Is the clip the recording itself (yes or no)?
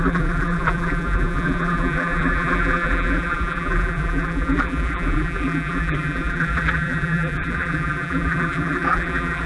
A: no